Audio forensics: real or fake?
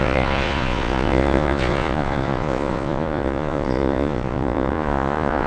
fake